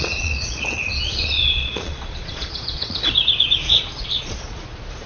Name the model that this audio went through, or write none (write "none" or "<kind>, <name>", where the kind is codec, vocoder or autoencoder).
vocoder, Vocos